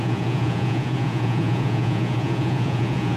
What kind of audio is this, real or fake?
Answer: fake